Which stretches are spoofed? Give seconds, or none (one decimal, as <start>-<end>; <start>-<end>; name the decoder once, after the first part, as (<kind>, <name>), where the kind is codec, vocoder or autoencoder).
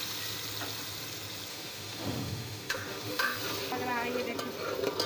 1.5-3.4 (autoencoder, DAC-VAE)